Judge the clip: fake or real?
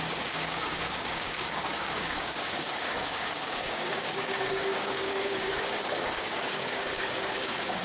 fake